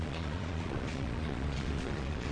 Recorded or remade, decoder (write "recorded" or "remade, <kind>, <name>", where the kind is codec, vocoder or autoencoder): remade, vocoder, Vocos